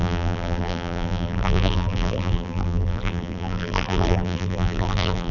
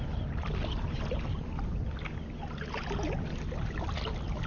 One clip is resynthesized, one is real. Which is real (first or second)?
second